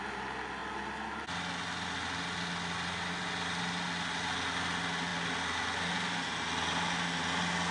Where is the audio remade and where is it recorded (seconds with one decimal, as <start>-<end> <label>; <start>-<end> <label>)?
0.0-7.7 recorded